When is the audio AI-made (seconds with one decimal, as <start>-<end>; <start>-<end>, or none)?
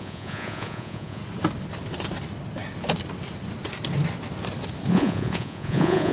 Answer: 0.0-1.2; 4.9-6.1